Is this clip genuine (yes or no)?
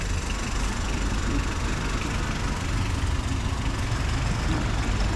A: yes